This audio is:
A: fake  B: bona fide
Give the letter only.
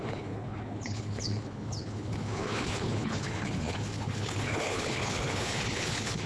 A